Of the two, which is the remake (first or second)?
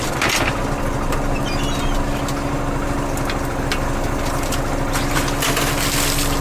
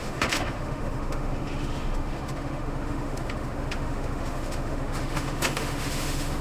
second